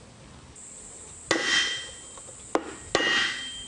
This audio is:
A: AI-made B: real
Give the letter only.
B